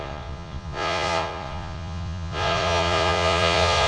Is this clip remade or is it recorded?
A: remade